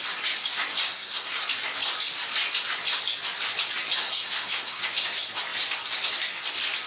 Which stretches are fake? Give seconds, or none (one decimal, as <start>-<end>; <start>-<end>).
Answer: 0.9-1.4; 4.0-4.8